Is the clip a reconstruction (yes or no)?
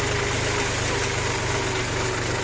no